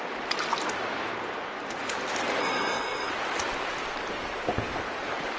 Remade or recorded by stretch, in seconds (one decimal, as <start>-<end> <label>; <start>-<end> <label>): 0.0-2.4 recorded; 2.4-3.1 remade; 3.1-5.4 recorded